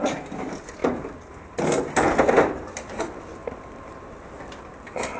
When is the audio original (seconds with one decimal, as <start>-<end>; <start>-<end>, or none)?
0.0-0.8; 1.9-3.4; 4.2-5.2